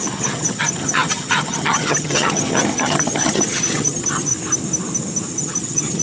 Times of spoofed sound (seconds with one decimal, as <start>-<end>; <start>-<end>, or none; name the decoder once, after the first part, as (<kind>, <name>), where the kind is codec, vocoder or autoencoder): 0.0-4.3 (vocoder, HiFi-GAN); 5.4-6.0

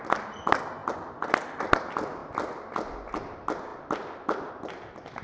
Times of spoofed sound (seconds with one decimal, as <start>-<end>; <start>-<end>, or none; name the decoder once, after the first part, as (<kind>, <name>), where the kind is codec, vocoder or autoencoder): 0.8-1.6 (vocoder, BigVGAN v2)

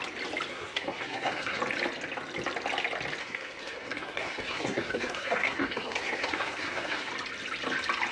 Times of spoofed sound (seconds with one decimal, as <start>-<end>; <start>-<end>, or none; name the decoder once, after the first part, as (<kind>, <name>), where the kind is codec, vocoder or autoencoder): 0.5-1.6 (codec, SNAC); 3.2-7.1

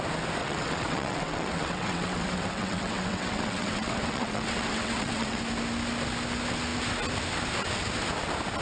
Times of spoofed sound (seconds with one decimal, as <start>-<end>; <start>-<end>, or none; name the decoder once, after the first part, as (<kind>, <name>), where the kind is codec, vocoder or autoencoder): 0.4-5.4 (vocoder, WaveNeXt)

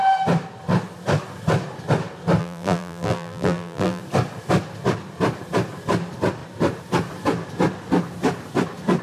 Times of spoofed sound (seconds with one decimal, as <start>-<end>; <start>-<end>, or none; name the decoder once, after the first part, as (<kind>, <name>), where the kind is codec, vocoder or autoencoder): 2.4-4.0 (vocoder, BigVGAN v2)

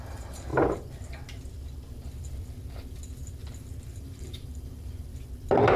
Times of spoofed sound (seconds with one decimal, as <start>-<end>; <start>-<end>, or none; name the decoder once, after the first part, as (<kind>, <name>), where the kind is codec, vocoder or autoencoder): 0.0-0.5 (vocoder, BigVGAN v2); 4.0-5.1

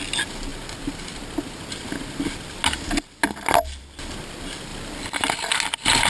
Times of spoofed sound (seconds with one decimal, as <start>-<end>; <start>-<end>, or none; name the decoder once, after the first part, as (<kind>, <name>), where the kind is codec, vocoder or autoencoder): none